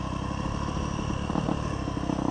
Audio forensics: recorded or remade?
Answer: recorded